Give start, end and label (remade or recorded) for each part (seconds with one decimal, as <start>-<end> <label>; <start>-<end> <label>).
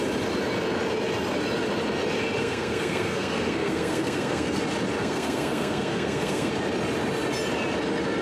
0.0-2.4 recorded; 2.4-4.6 remade; 4.6-5.0 recorded; 5.0-6.5 remade; 6.5-8.2 recorded